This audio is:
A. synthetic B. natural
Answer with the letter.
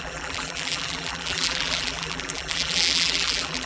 A